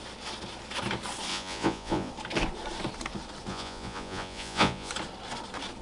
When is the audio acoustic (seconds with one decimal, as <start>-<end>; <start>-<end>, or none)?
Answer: 0.0-1.3; 2.1-3.5; 4.9-5.8

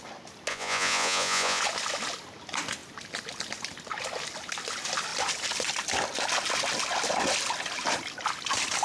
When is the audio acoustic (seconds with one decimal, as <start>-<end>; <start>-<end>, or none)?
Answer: 0.0-0.5; 1.6-8.8

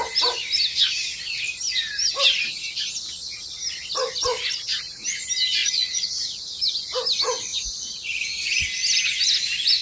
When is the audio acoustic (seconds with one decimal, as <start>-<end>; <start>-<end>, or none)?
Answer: 0.0-5.6; 6.6-7.5; 8.6-9.8

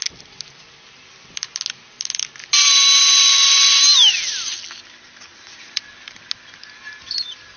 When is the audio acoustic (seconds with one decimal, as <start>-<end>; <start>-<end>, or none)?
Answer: 0.0-5.3; 5.8-7.6

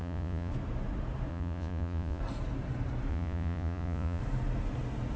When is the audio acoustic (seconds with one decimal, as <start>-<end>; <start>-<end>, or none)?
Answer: 0.5-1.3; 2.2-3.1; 4.2-5.2

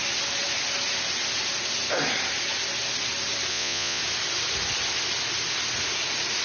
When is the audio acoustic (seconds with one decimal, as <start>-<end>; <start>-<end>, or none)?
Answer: 0.0-3.5; 4.0-6.4

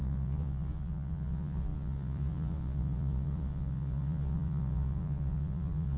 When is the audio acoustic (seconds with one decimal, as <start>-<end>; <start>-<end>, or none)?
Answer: none